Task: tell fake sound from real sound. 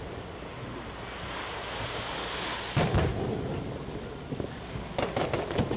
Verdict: real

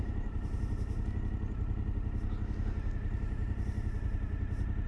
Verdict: real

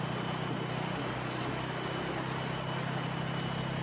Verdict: real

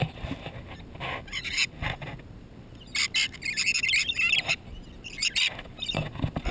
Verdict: real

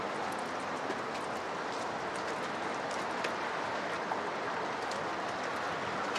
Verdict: real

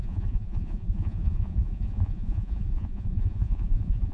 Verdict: fake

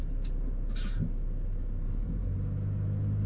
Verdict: real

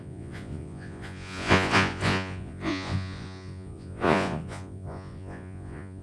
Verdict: fake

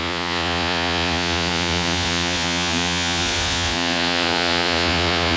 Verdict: fake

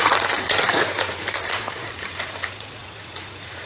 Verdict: fake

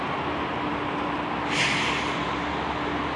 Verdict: real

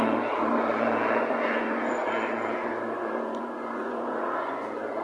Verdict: fake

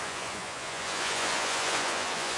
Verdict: fake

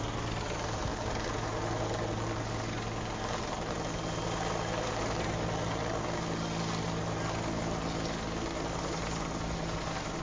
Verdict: real